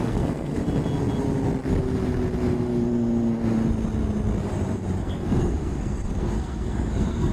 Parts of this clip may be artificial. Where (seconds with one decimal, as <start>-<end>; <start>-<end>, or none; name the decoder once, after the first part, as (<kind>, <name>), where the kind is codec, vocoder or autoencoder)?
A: 0.0-0.6 (codec, SNAC); 5.0-7.3